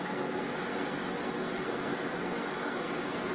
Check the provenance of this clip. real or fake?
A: fake